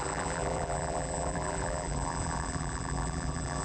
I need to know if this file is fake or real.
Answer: fake